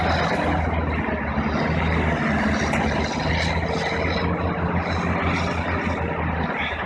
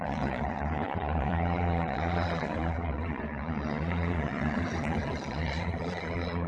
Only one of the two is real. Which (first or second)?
first